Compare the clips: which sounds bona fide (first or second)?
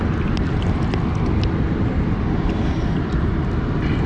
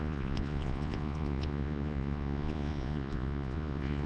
first